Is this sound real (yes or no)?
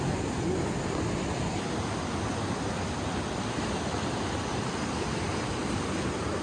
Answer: yes